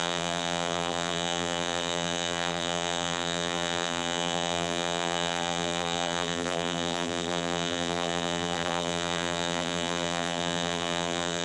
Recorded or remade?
remade